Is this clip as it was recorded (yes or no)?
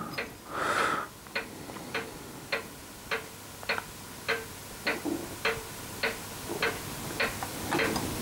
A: yes